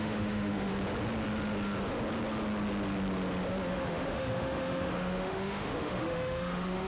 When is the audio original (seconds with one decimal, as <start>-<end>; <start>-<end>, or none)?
0.7-3.7

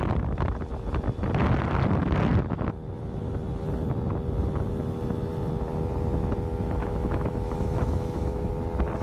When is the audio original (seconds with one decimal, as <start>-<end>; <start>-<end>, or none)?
0.0-6.8; 8.5-9.0

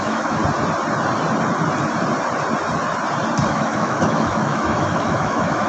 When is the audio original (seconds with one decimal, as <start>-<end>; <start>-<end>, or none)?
0.4-3.5